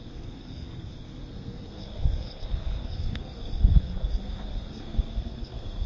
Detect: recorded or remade remade